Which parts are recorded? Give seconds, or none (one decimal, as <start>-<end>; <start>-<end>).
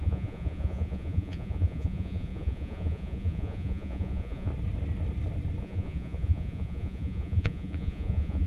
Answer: 4.5-5.6